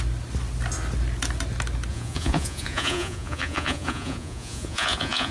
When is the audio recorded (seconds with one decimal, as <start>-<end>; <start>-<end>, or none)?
0.0-1.9